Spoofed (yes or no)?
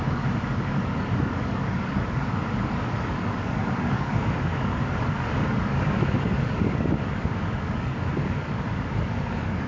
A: yes